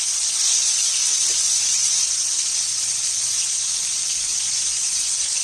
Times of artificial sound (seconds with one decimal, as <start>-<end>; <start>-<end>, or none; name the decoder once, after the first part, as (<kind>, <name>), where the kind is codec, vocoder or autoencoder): 2.7-5.4 (vocoder, BigVGAN v2)